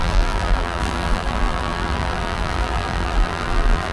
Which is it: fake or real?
fake